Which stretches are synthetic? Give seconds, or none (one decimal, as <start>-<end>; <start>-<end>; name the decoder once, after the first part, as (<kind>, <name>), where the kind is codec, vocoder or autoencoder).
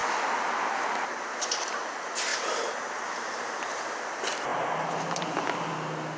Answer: none